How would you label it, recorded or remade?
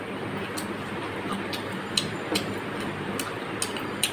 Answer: recorded